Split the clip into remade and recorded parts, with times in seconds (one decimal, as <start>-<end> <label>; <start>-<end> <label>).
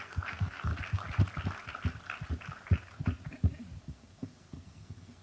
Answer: 0.0-0.7 remade; 0.7-3.8 recorded; 3.8-5.2 remade